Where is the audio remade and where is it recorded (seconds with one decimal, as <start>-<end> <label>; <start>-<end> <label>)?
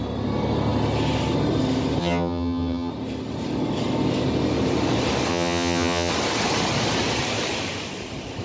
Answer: 0.0-2.0 recorded; 2.0-2.9 remade; 2.9-5.3 recorded; 5.3-6.1 remade; 6.1-8.4 recorded